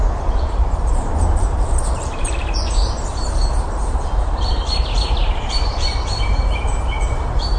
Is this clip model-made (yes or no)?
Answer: yes